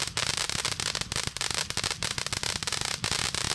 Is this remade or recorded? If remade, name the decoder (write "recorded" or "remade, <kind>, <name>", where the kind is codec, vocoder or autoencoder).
recorded